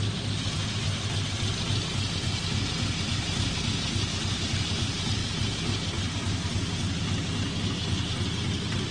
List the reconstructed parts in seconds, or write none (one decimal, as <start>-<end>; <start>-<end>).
none